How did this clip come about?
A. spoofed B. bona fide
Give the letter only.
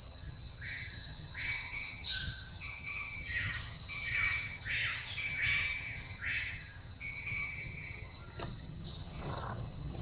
A